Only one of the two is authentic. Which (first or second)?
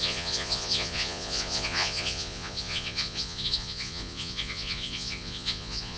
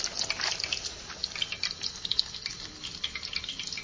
second